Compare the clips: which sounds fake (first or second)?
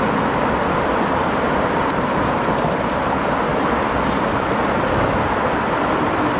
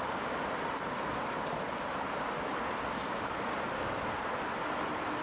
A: first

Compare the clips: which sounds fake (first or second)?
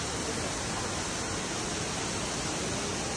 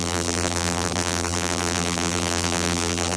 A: second